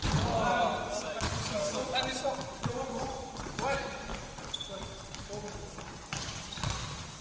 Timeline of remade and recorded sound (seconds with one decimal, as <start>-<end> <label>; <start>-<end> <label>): 0.0-7.2 recorded

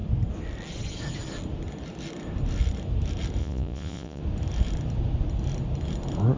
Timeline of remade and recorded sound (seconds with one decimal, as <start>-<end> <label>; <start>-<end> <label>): 0.0-3.4 recorded; 3.4-4.2 remade; 4.2-6.4 recorded

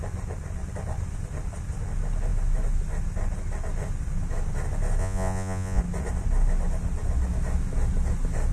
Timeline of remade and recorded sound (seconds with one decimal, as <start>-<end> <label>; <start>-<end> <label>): 0.0-5.0 recorded; 5.0-5.8 remade; 5.8-8.5 recorded

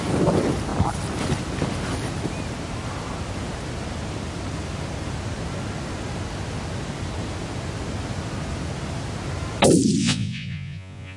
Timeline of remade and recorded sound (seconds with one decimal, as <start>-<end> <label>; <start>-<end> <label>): 0.0-10.0 recorded; 10.0-11.2 remade

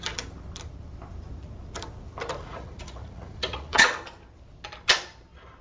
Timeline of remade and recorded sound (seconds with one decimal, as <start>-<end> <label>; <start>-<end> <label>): 0.0-2.4 recorded; 2.4-3.9 remade; 3.9-5.6 recorded

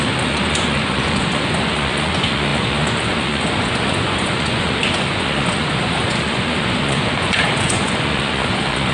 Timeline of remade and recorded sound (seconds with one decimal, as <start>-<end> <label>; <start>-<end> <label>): 0.0-8.9 remade

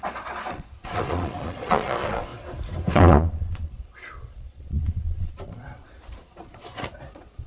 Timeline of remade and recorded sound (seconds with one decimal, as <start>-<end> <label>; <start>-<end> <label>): 0.0-2.3 remade; 2.3-2.9 recorded; 2.9-7.5 remade